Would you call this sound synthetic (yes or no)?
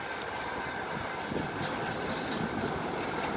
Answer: no